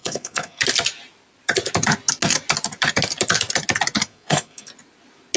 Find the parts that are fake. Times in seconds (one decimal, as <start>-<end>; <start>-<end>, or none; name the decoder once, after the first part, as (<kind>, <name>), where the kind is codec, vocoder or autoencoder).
0.0-0.6 (codec, SNAC); 4.1-4.7